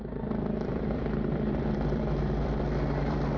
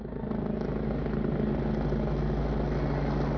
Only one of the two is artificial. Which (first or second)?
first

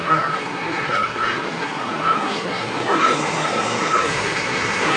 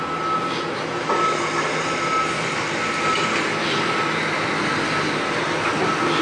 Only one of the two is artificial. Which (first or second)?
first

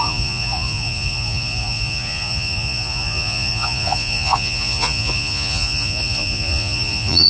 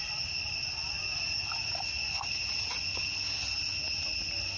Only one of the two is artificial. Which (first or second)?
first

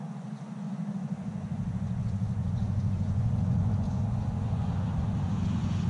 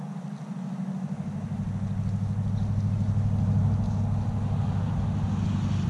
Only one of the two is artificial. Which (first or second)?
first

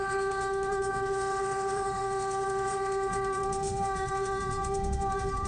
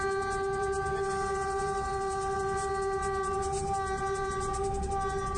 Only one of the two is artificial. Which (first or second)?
first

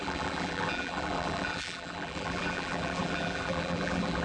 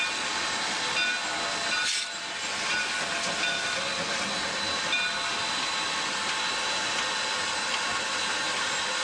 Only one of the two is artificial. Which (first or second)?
first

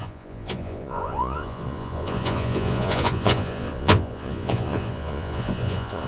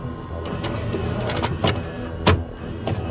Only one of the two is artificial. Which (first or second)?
first